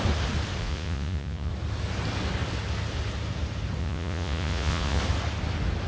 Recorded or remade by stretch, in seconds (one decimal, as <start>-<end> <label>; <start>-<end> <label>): 0.0-0.6 recorded; 0.6-1.5 remade; 1.5-3.8 recorded; 3.8-5.0 remade; 5.0-5.9 recorded